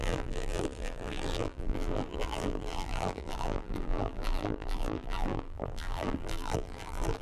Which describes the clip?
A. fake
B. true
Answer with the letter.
A